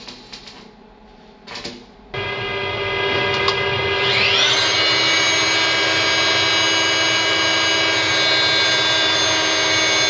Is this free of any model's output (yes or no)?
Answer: yes